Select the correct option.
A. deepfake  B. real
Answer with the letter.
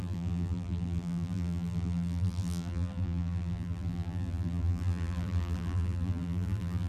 A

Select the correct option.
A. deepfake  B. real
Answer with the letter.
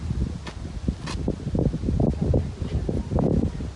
B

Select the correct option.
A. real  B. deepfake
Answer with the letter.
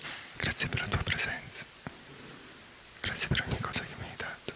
B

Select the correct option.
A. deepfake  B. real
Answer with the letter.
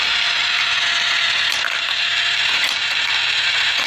B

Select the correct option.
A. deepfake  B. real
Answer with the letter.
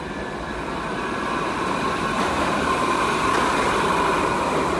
B